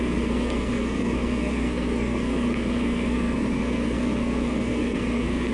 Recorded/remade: remade